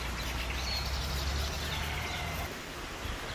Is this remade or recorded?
recorded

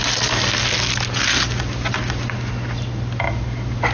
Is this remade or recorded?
recorded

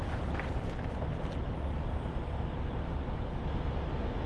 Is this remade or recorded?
recorded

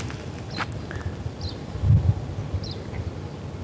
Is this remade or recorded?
recorded